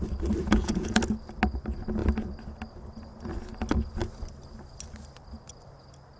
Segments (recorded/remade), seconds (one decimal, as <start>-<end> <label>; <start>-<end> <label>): 0.0-0.4 recorded; 0.4-1.0 remade; 1.0-6.2 recorded